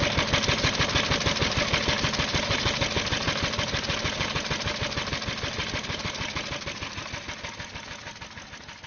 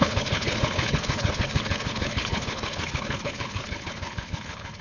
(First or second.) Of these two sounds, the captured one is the first